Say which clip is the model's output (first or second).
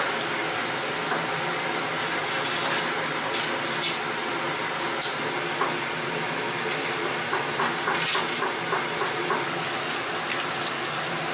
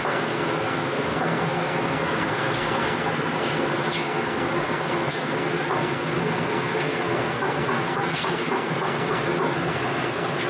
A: second